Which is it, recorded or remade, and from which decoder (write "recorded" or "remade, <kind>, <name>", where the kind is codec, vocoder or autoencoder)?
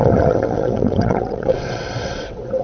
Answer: remade, vocoder, WaveNeXt